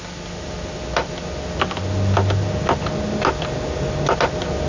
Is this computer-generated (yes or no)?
no